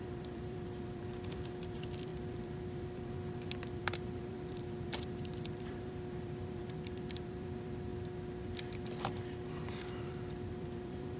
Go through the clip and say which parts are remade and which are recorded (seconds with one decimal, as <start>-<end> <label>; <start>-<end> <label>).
0.0-7.9 remade; 7.9-9.5 recorded; 9.5-11.2 remade